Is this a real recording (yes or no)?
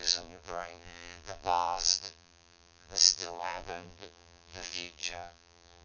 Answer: no